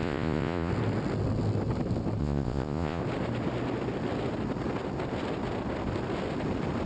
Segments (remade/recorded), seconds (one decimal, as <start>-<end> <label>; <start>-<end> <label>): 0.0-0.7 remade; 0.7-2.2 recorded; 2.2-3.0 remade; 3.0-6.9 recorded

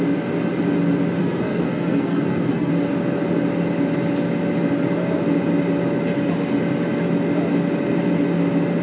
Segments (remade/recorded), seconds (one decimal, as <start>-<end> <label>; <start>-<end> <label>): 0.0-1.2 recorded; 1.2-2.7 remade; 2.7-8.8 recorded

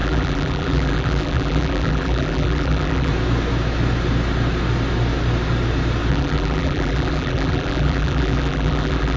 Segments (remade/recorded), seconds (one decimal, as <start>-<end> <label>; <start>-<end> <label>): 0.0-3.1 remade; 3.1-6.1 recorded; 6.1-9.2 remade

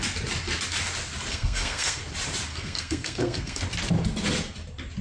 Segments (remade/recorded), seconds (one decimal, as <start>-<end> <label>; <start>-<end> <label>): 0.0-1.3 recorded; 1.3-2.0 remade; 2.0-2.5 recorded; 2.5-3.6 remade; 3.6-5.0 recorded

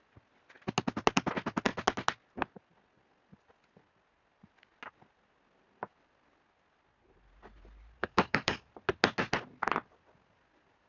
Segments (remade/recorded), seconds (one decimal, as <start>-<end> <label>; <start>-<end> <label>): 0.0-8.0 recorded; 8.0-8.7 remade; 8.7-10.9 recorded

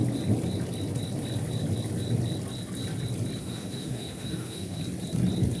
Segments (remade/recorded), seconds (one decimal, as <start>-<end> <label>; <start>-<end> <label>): 0.0-3.4 recorded; 3.4-4.8 remade; 4.8-5.6 recorded

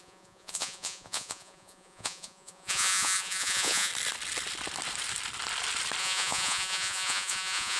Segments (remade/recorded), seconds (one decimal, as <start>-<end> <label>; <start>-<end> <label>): 0.0-3.9 remade; 3.9-6.0 recorded; 6.0-7.8 remade